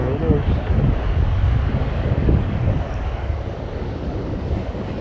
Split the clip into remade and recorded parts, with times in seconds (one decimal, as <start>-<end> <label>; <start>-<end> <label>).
0.0-5.0 remade